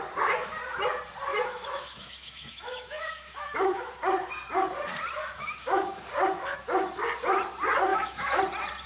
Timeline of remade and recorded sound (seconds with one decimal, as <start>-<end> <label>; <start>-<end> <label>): 0.0-1.3 recorded; 1.3-3.9 remade; 3.9-5.2 recorded; 5.2-6.0 remade; 6.0-7.9 recorded; 7.9-8.4 remade; 8.4-8.9 recorded